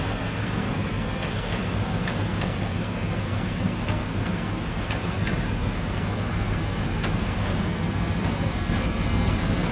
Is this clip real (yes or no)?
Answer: no